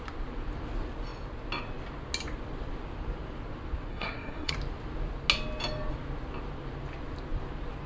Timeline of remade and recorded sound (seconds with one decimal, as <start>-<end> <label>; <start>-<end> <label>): 0.0-3.9 recorded; 3.9-4.5 remade; 4.5-7.9 recorded